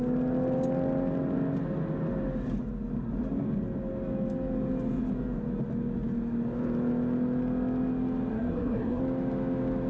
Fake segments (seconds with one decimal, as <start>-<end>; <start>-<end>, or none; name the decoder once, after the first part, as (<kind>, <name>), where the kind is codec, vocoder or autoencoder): 8.3-9.0 (codec, SNAC)